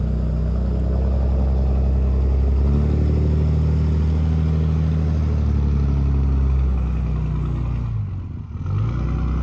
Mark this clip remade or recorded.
recorded